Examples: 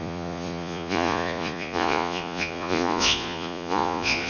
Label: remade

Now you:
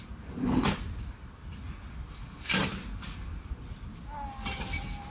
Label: recorded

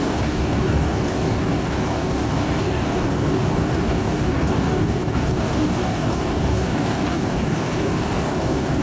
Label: remade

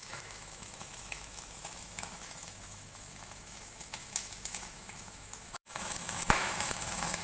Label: remade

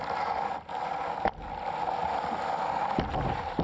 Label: recorded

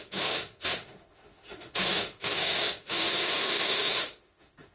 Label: remade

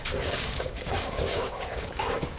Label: remade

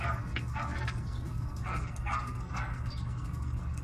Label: remade